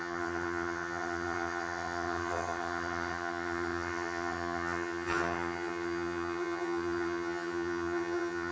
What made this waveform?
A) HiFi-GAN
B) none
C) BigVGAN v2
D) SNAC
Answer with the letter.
A